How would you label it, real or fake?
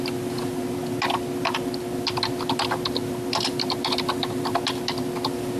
real